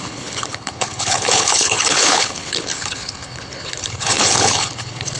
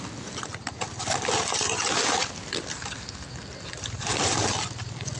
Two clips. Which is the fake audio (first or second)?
first